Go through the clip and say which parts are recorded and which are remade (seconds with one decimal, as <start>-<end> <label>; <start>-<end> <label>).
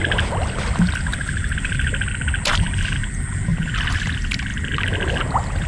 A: 0.0-3.5 recorded; 3.5-4.0 remade; 4.0-4.5 recorded; 4.5-5.2 remade; 5.2-5.7 recorded